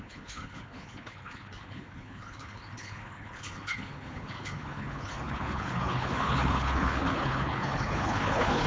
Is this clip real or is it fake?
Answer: fake